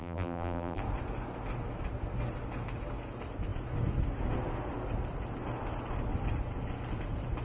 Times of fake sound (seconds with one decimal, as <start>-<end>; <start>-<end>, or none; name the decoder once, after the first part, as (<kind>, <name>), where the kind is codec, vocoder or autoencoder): 0.0-0.8 (vocoder, BigVGAN v2)